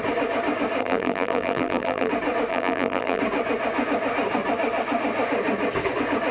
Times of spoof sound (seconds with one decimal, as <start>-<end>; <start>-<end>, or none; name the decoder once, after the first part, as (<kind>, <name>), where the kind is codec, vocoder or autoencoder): 0.8-2.1 (vocoder, BigVGAN v2); 2.5-3.2